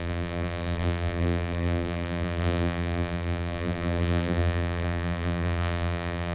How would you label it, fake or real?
fake